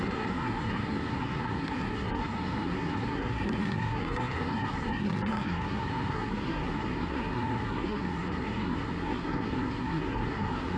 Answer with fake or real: fake